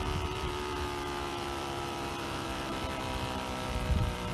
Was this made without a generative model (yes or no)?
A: no